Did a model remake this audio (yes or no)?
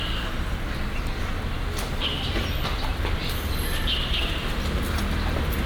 no